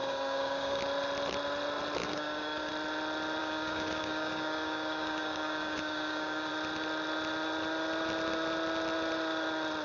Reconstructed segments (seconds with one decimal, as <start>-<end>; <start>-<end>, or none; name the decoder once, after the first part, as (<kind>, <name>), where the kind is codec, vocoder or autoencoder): 0.0-0.8 (codec, DAC); 2.0-2.7; 3.4-6.5